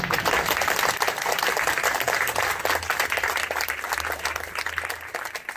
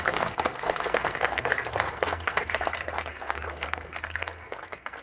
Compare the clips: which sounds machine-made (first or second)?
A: second